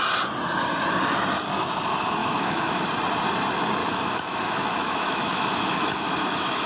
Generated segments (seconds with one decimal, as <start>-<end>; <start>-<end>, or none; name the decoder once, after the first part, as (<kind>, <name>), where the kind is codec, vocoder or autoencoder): 2.2-2.8 (autoencoder, DAC-VAE); 3.8-6.7